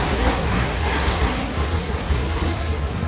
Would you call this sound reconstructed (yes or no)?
yes